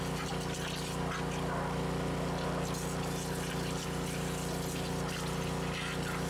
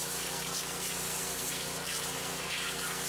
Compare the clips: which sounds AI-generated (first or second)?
second